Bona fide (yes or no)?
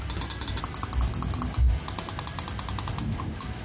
yes